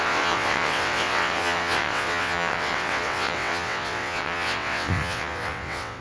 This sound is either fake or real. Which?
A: fake